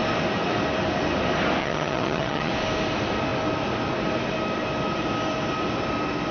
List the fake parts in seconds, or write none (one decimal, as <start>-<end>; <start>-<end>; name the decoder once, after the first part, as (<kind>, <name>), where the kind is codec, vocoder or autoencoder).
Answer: 1.6-2.5 (vocoder, HiFi-GAN)

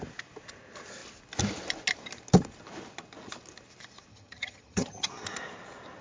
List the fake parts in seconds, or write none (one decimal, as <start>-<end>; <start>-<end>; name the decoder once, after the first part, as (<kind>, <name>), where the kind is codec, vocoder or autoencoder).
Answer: 4.1-5.1 (vocoder, HiFi-GAN)

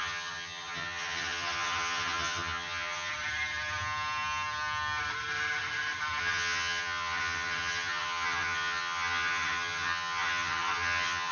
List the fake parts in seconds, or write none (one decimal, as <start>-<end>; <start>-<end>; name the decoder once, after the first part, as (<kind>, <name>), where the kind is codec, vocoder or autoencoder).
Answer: 0.0-3.1 (vocoder, HiFi-GAN); 6.2-11.3

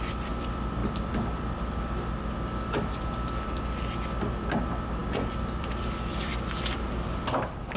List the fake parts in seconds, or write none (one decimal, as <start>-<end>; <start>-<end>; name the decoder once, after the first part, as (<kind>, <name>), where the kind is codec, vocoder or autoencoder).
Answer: none

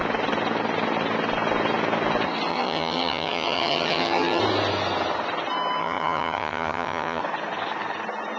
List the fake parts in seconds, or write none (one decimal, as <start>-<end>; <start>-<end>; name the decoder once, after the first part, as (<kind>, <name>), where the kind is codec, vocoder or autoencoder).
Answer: 2.5-4.4 (vocoder, HiFi-GAN); 5.8-7.2